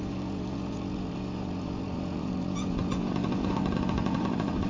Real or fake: fake